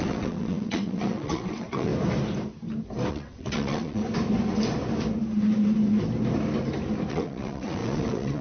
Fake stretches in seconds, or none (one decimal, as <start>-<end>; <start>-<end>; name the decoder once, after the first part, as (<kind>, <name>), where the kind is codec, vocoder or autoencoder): 0.0-1.9 (vocoder, WaveNeXt); 3.1-4.0; 7.1-8.4